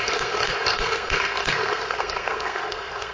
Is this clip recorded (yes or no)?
no